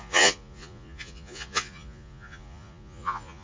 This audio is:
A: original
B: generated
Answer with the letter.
B